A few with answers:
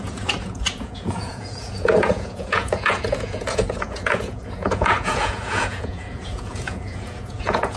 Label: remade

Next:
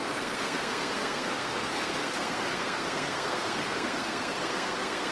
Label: remade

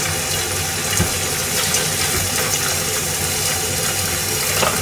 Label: recorded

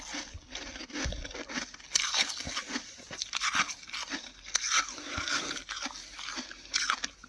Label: recorded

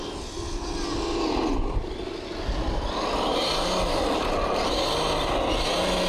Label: recorded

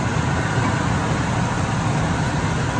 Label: recorded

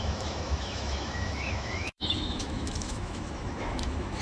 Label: remade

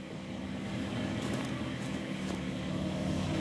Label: remade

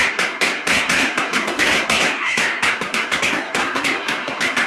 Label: remade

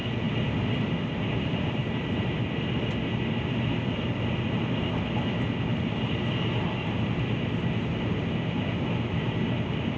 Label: recorded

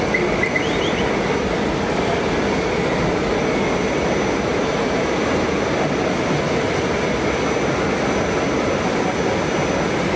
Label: recorded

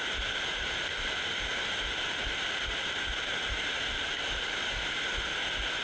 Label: recorded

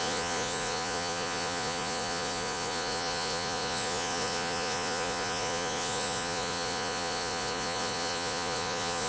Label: remade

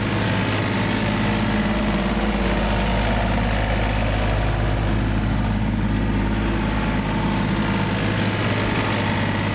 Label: recorded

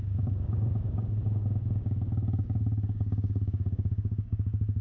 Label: remade